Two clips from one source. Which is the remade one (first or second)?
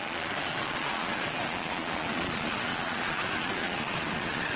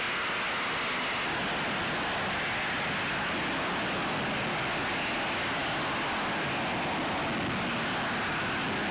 first